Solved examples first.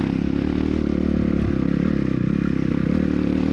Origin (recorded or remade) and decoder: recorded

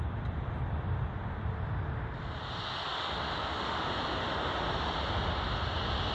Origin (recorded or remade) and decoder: recorded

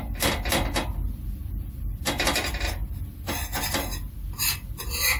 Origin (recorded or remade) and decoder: recorded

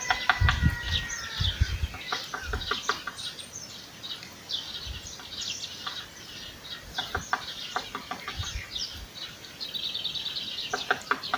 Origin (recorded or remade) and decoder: recorded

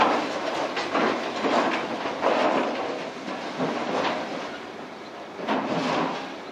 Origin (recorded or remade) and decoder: recorded